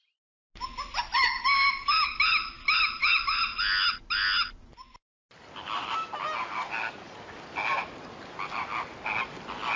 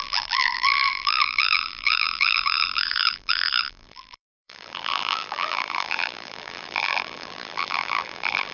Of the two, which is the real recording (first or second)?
first